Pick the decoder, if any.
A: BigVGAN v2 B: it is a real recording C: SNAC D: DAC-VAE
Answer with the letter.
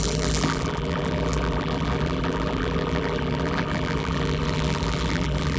A